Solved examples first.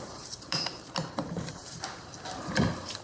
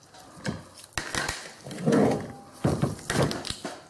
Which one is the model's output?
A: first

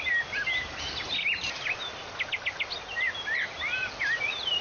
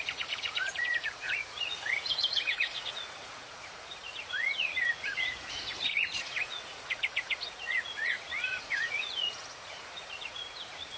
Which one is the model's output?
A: second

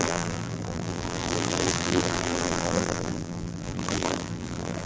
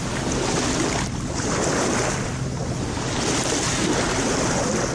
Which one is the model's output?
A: first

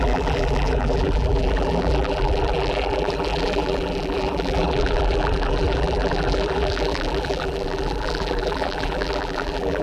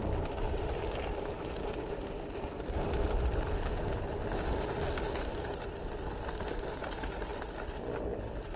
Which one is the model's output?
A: first